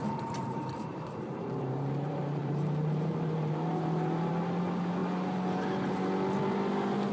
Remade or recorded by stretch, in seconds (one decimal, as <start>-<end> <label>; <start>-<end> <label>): 0.0-4.3 remade; 4.3-7.1 recorded